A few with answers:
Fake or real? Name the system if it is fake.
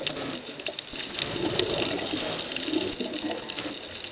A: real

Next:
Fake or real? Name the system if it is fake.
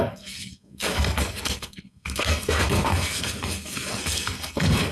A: fake, codec, SNAC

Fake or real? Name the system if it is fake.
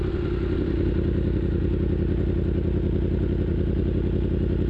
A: real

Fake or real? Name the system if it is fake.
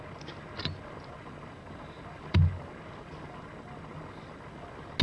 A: real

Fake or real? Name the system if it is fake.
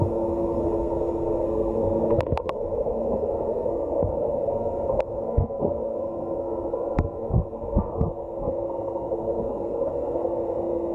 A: fake, codec, SNAC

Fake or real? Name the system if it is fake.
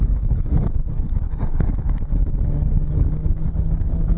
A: fake, codec, DAC